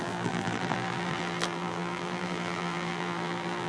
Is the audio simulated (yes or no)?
yes